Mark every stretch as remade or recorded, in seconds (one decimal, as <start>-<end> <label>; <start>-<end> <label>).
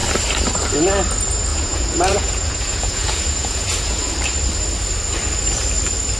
0.0-1.5 recorded; 1.5-4.1 remade; 4.1-6.2 recorded